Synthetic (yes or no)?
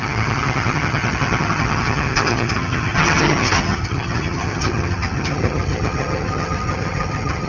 yes